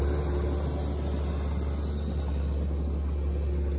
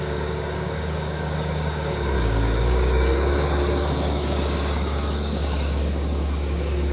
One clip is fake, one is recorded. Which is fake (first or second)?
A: second